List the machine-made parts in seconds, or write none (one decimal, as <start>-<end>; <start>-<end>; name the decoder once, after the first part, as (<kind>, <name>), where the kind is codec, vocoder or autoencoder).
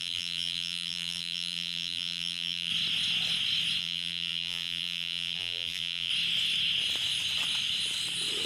0.0-2.7 (vocoder, BigVGAN v2); 3.8-6.1